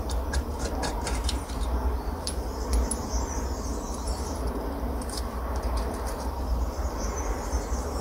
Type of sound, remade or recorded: remade